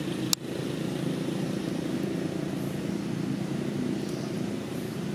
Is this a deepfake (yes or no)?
no